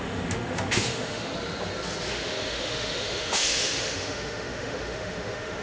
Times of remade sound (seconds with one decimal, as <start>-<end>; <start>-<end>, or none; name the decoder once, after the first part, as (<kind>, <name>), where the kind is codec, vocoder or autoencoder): 0.0-1.3 (autoencoder, DAC-VAE); 2.1-5.6